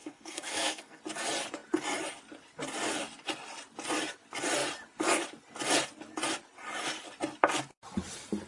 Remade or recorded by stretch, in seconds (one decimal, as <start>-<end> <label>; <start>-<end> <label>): 0.0-1.0 remade; 1.0-8.5 recorded